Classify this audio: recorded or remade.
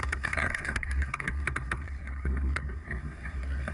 remade